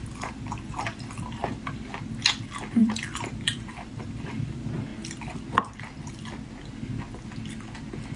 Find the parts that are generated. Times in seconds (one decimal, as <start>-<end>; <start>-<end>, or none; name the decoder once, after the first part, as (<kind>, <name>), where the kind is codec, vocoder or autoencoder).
0.0-1.4 (vocoder, BigVGAN v2); 2.8-4.9